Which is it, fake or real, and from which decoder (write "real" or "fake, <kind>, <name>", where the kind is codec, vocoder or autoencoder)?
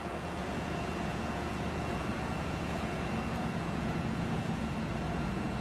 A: fake, vocoder, Vocos